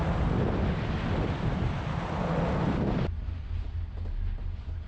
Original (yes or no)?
yes